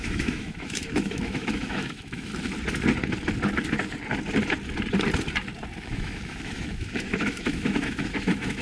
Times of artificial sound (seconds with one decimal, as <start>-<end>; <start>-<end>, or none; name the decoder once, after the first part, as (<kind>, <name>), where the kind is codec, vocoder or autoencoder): 0.0-2.3 (autoencoder, DAC-VAE); 5.8-8.6